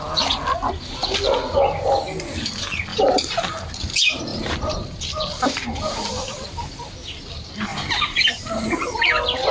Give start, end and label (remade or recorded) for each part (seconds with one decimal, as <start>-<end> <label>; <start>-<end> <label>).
0.0-2.9 recorded; 2.9-3.7 remade; 3.7-4.3 recorded; 4.3-7.0 remade; 7.0-7.7 recorded; 7.7-9.0 remade; 9.0-9.5 recorded